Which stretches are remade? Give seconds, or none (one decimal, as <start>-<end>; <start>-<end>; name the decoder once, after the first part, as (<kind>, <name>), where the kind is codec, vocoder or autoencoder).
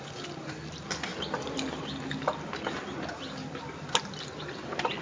none